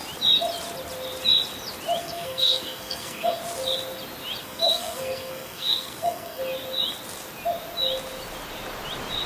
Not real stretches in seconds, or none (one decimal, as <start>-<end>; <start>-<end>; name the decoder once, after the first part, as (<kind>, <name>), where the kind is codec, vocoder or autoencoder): 2.0-3.4 (codec, SNAC); 4.4-6.4